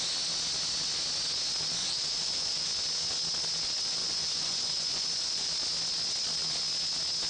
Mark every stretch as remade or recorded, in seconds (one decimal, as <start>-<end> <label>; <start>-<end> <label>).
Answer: 0.0-1.8 recorded; 1.8-2.7 remade; 2.7-4.0 recorded; 4.0-5.5 remade; 5.5-7.3 recorded